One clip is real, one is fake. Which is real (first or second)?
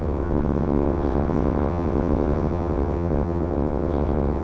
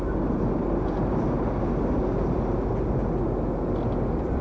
second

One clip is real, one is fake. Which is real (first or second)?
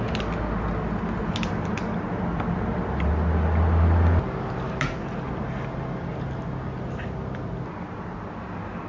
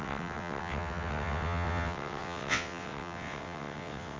first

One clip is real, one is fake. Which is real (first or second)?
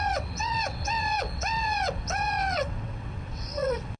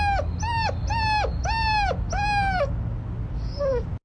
second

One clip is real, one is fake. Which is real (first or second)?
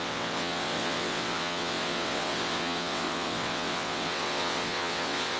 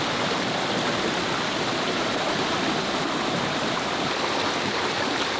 second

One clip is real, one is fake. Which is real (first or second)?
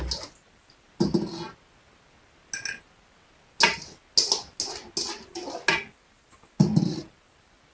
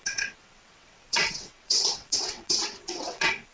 first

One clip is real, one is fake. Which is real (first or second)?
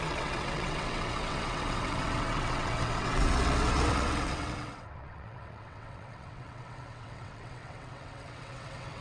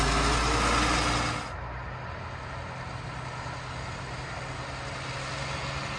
second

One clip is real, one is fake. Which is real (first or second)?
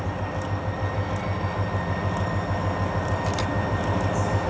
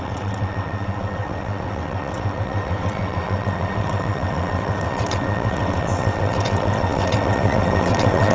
first